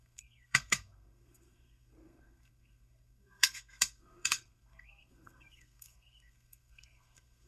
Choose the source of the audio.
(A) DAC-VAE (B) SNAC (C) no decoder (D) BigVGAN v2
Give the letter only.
B